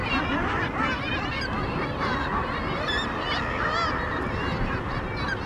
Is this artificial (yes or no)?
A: no